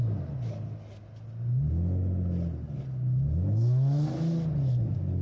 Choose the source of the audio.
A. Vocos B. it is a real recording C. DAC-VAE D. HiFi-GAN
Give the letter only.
B